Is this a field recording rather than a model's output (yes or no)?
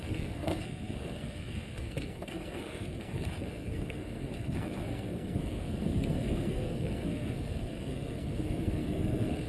no